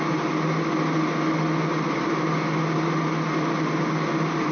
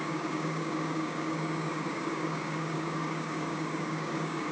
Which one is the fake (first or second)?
second